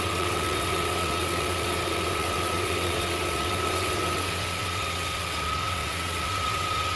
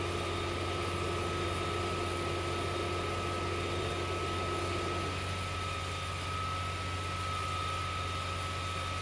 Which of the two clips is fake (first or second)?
first